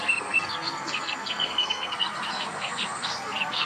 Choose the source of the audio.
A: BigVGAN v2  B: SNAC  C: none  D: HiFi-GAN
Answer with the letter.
B